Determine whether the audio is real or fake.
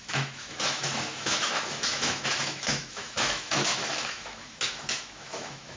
fake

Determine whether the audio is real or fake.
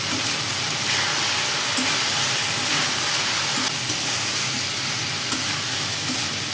real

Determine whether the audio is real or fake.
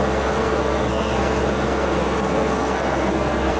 fake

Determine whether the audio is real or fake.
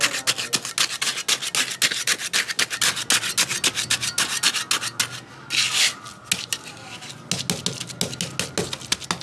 real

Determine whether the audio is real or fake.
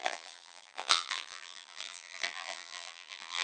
fake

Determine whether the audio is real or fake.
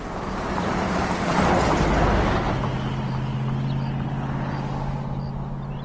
real